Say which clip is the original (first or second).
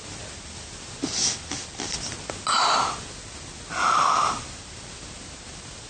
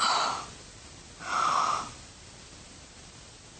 first